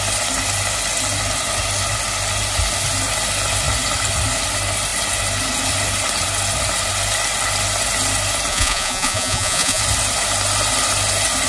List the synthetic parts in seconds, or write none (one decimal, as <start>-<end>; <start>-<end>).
8.5-9.8